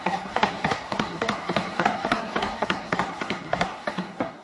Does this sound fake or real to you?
fake